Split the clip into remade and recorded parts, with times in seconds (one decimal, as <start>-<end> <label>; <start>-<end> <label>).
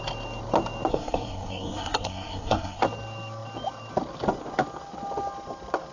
0.0-0.9 recorded; 0.9-2.8 remade; 2.8-5.9 recorded